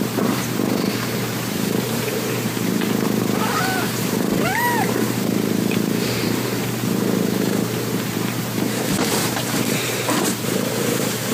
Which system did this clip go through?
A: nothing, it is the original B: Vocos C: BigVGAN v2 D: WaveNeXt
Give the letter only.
C